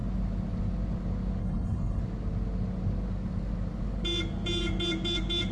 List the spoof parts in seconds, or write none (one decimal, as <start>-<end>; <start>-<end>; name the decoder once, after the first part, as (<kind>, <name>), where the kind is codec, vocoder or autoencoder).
1.4-2.0 (codec, HILCodec)